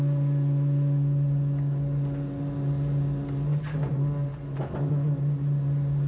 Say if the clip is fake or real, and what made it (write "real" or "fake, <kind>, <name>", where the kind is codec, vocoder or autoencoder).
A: real